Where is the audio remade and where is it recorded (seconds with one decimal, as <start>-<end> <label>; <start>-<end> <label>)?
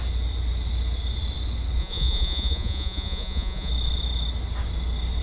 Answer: 0.0-1.8 recorded; 1.8-3.7 remade; 3.7-5.2 recorded